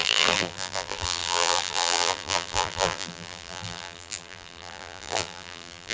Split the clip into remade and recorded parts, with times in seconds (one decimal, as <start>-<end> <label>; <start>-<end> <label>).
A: 0.0-5.9 remade